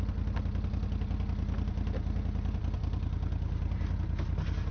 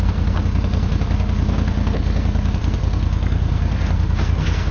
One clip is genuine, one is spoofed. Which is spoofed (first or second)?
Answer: second